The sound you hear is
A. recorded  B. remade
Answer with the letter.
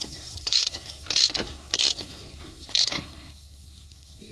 B